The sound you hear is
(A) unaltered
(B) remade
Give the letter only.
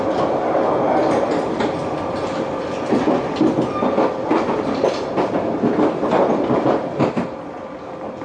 A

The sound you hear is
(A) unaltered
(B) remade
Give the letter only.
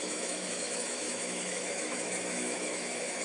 B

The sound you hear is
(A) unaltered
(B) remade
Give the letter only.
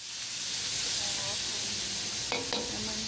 A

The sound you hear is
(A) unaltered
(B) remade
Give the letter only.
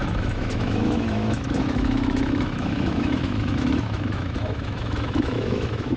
B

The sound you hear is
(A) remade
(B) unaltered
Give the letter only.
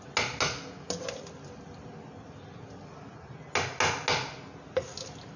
B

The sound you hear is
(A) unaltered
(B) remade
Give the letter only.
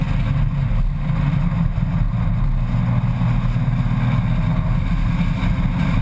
A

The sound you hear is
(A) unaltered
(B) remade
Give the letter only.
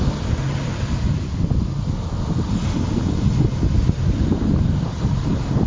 A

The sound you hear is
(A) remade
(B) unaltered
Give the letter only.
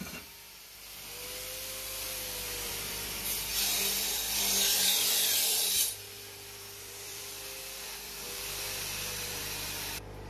A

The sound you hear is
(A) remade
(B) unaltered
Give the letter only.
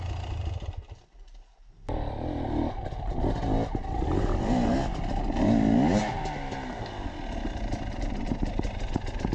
B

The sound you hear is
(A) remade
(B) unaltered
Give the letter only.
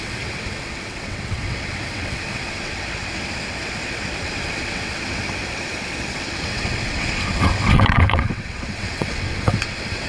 A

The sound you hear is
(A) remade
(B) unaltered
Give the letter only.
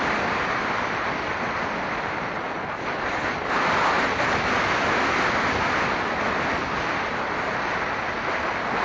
B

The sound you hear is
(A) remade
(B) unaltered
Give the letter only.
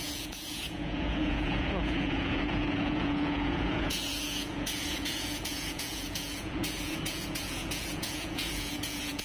A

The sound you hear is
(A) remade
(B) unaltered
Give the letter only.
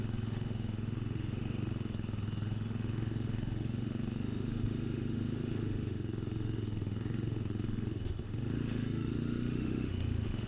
A